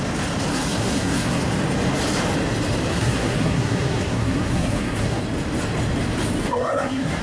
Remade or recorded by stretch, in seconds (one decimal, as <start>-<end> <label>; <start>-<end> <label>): 0.0-0.5 recorded; 0.5-1.4 remade; 1.4-2.9 recorded; 2.9-5.2 remade; 5.2-6.4 recorded; 6.4-7.2 remade

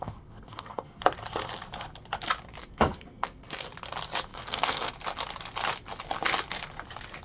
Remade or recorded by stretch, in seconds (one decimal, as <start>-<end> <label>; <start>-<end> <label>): 0.0-1.0 remade; 1.0-2.6 recorded; 2.6-3.7 remade; 3.7-4.3 recorded; 4.3-4.9 remade; 4.9-7.2 recorded

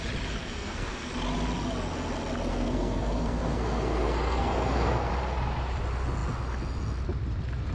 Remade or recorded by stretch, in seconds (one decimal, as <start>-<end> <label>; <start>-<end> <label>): 0.0-0.4 recorded; 0.4-1.1 remade; 1.1-2.5 recorded; 2.5-5.1 remade; 5.1-7.7 recorded

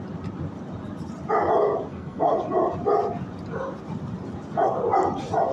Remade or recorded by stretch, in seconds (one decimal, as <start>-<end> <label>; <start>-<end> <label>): 0.0-1.9 recorded; 1.9-2.4 remade; 2.4-5.5 recorded

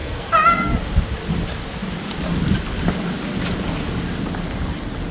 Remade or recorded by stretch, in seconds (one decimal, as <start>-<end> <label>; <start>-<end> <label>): 0.0-0.7 remade; 0.7-5.1 recorded